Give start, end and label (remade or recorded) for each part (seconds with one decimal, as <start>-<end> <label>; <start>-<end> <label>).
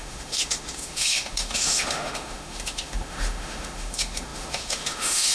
0.0-5.3 remade